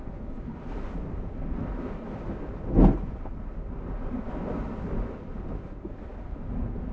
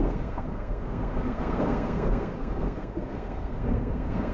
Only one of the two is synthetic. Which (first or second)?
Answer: second